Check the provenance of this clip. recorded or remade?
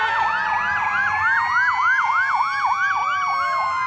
recorded